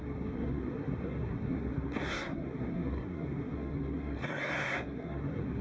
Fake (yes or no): yes